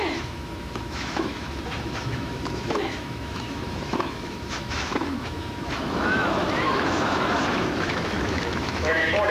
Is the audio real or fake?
fake